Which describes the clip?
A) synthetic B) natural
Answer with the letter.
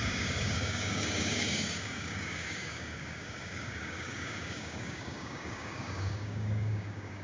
A